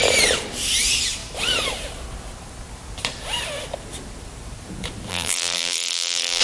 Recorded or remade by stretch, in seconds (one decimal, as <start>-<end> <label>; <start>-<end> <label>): 0.0-5.1 recorded; 5.1-6.4 remade